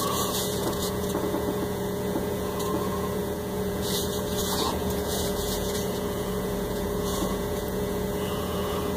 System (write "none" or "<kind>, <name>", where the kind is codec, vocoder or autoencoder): vocoder, Vocos